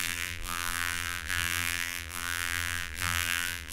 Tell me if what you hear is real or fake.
fake